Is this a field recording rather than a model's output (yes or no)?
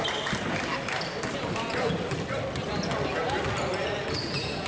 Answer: yes